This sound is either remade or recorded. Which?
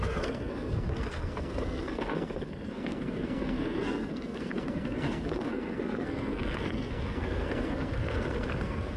remade